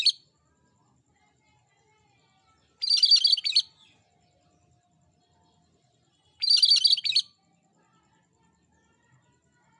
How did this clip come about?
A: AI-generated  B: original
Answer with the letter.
B